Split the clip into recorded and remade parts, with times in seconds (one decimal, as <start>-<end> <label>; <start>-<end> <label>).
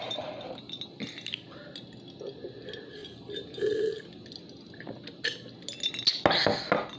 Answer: 0.0-7.0 recorded